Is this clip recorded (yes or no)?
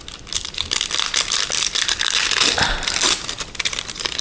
yes